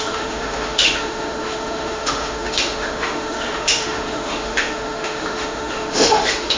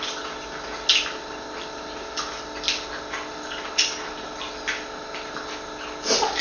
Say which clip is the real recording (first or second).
second